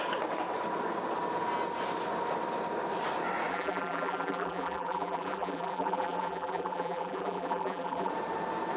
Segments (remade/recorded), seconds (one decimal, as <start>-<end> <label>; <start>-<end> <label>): 0.0-3.5 recorded; 3.5-8.1 remade; 8.1-8.8 recorded